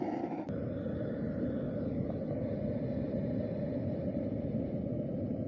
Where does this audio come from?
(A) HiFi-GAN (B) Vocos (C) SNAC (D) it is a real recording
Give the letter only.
D